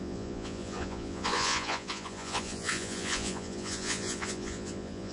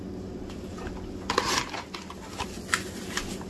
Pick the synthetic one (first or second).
first